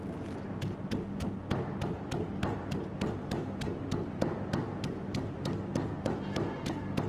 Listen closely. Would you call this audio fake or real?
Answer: real